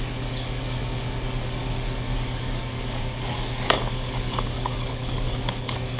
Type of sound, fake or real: fake